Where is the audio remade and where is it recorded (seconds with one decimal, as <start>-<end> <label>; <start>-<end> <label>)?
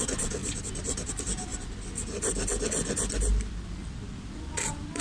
0.0-5.0 recorded